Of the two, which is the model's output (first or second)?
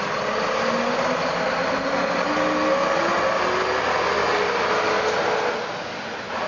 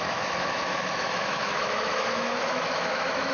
second